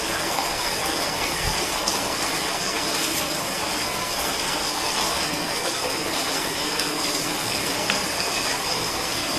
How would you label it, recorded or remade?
remade